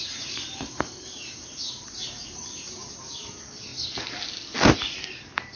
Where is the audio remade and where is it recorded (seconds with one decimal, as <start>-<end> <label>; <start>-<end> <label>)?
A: 0.0-3.7 remade; 3.7-5.1 recorded; 5.1-5.6 remade